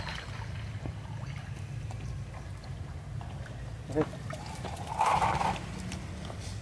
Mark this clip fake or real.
real